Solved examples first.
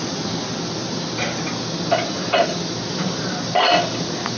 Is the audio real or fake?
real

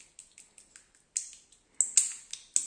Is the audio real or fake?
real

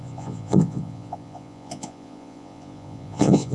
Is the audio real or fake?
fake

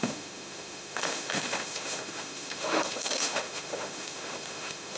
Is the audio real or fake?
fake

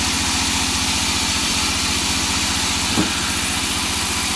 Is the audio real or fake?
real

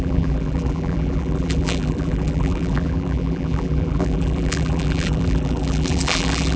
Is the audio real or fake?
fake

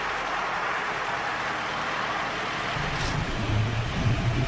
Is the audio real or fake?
real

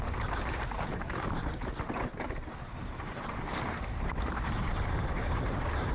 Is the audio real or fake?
fake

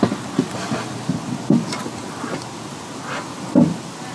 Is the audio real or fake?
real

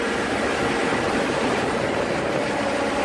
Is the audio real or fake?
fake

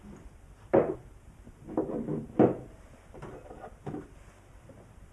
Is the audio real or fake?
real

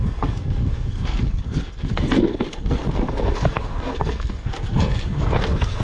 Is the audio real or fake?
fake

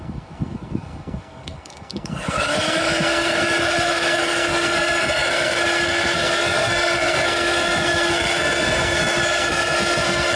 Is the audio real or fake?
fake